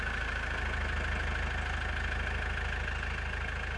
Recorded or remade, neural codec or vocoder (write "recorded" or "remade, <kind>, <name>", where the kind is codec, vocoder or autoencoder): recorded